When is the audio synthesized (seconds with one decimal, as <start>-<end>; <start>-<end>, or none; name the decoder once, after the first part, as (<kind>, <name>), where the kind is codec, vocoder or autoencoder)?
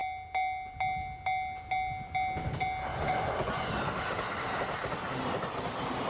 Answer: 2.9-3.7 (vocoder, Vocos)